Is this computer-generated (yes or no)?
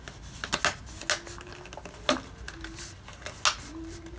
no